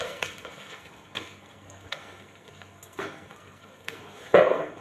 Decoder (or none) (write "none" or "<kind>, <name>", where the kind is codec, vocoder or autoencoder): codec, SNAC